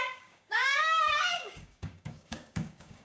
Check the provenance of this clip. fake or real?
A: fake